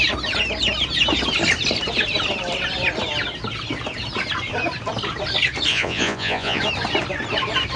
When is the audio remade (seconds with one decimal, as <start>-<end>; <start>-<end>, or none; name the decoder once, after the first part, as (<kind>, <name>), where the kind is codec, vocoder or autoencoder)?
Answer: 5.7-6.6 (vocoder, Vocos)